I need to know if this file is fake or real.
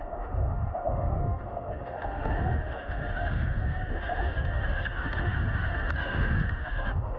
fake